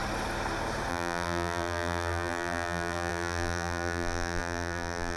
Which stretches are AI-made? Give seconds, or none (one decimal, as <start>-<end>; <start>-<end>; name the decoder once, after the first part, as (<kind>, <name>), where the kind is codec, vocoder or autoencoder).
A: 0.9-5.2 (vocoder, BigVGAN v2)